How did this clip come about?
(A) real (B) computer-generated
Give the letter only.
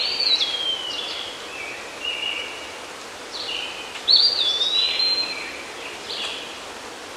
A